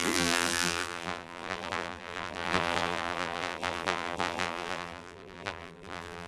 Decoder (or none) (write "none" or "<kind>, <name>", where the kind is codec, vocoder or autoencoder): vocoder, BigVGAN v2